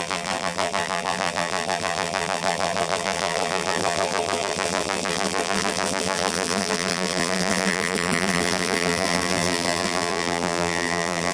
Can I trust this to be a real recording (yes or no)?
no